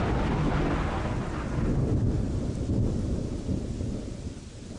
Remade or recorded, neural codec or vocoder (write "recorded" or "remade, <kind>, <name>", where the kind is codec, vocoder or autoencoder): recorded